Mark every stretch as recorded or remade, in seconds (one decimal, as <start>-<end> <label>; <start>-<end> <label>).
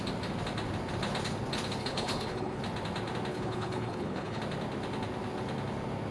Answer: 0.0-1.8 recorded; 1.8-2.6 remade; 2.6-3.3 recorded; 3.3-4.4 remade; 4.4-6.1 recorded